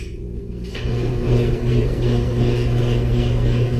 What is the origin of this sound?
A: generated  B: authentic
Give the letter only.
A